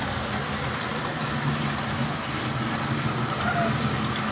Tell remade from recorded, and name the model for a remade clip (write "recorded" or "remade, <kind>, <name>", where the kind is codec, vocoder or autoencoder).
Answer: recorded